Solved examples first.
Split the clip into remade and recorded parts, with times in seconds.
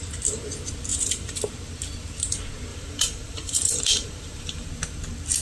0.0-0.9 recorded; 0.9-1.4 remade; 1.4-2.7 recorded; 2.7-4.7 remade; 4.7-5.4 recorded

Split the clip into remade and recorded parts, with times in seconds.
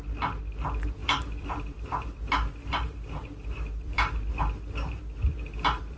0.0-1.0 recorded; 1.0-2.3 remade; 2.3-2.7 recorded; 2.7-4.4 remade; 4.4-6.0 recorded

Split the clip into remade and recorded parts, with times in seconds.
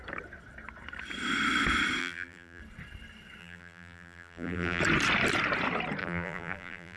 0.0-2.0 recorded; 2.0-2.6 remade; 2.6-3.4 recorded; 3.4-4.8 remade; 4.8-6.0 recorded; 6.0-7.0 remade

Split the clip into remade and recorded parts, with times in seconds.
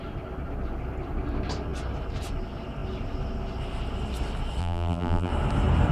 0.0-4.6 recorded; 4.6-5.3 remade; 5.3-5.9 recorded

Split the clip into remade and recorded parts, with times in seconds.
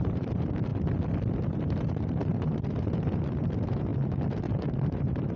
0.0-0.7 remade; 0.7-1.4 recorded; 1.4-3.9 remade; 3.9-4.7 recorded; 4.7-5.4 remade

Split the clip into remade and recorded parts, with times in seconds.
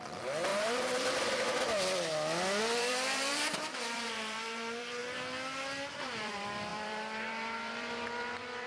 0.0-5.0 remade; 5.0-6.0 recorded; 6.0-8.7 remade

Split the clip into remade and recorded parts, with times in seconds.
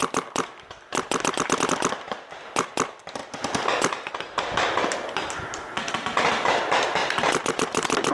0.0-1.6 remade; 1.6-3.2 recorded; 3.2-4.1 remade; 4.1-7.0 recorded; 7.0-8.1 remade